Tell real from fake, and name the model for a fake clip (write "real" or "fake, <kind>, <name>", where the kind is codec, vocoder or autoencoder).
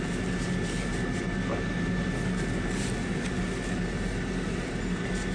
real